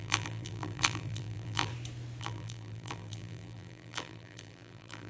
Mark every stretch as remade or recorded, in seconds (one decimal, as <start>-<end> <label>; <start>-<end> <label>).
0.0-1.7 remade; 1.7-2.2 recorded; 2.2-5.1 remade